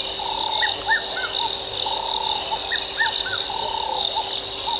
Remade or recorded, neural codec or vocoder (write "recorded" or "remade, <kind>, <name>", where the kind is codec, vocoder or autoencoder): recorded